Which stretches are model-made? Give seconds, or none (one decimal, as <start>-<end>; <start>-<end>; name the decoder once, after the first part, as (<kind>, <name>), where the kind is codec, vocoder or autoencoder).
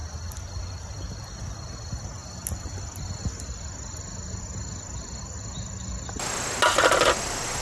none